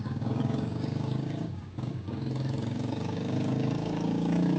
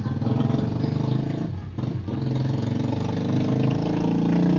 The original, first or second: second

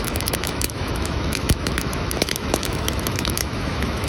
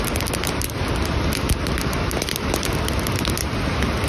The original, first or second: second